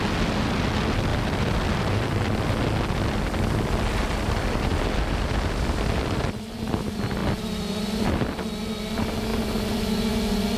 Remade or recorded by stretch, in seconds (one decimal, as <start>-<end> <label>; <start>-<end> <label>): 0.0-1.1 recorded; 1.1-2.6 remade; 2.6-7.2 recorded; 7.2-8.1 remade; 8.1-10.6 recorded